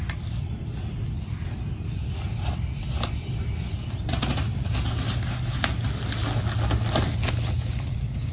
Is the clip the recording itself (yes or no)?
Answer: yes